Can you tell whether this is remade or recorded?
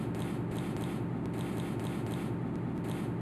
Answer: recorded